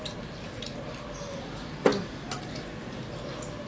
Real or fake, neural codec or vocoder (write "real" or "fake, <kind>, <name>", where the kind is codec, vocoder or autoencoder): real